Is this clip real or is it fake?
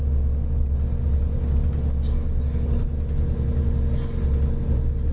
real